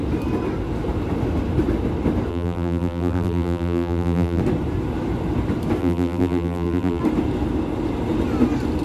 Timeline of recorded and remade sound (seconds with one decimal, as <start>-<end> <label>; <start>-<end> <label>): 0.0-2.3 recorded; 2.3-4.4 remade; 4.4-5.8 recorded; 5.8-7.0 remade; 7.0-8.8 recorded